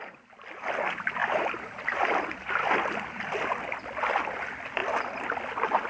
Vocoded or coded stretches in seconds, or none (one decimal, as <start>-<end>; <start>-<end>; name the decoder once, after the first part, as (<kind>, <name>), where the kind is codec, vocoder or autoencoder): 1.2-3.8 (vocoder, BigVGAN v2)